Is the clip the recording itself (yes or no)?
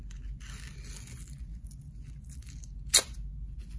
yes